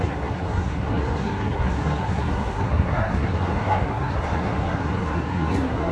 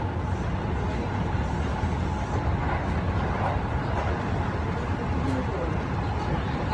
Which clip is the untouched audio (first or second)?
second